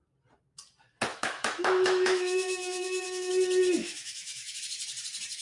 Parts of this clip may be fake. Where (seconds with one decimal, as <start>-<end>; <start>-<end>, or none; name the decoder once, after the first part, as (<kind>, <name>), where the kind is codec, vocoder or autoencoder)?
1.1-3.3 (autoencoder, DAC-VAE); 3.8-4.6